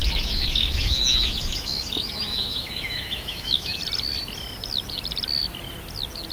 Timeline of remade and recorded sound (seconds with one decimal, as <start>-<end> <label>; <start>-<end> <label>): 0.0-3.8 remade; 3.8-6.3 recorded